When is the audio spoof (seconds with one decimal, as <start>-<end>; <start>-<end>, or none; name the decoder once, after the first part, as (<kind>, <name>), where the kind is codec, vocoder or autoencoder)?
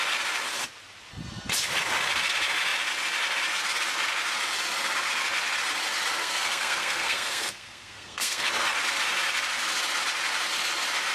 6.2-8.5 (codec, SNAC)